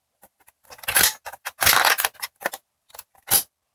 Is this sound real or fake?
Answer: real